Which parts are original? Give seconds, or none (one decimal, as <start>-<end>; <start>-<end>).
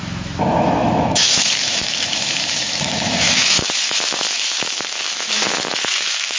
none